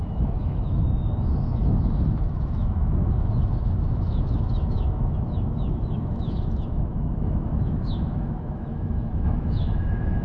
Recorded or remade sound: remade